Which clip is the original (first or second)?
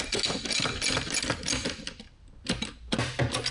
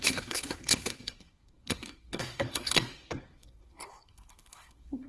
first